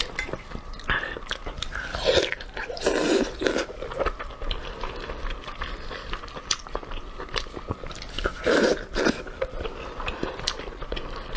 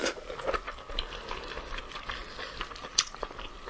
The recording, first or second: second